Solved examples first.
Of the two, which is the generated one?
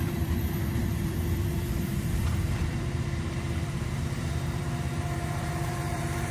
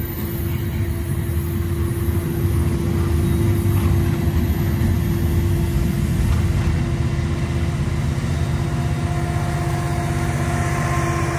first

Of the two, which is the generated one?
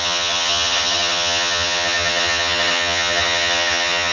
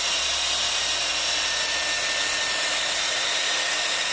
first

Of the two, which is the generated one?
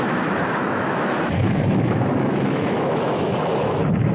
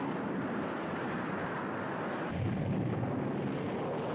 first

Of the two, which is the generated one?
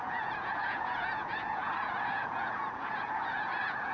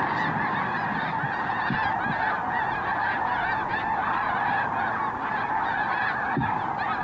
first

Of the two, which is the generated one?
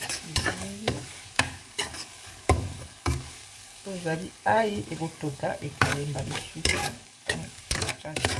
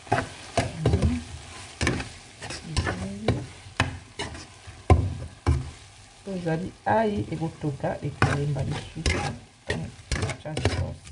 first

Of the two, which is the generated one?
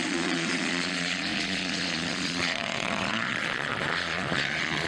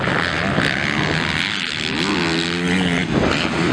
first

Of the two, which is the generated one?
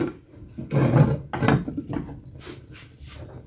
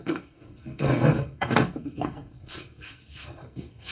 second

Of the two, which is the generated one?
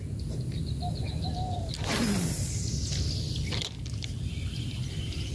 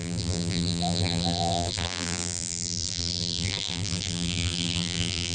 second